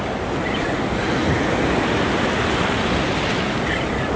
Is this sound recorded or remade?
recorded